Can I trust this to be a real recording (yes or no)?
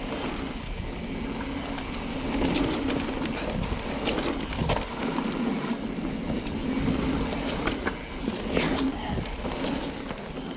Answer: yes